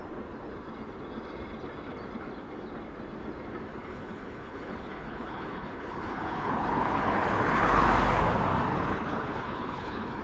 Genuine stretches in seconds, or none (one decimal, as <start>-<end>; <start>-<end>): 0.0-3.7; 7.8-8.7